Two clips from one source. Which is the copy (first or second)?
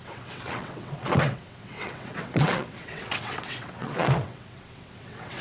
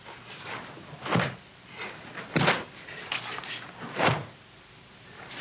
first